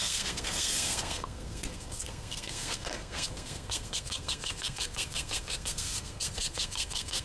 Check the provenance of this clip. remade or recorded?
remade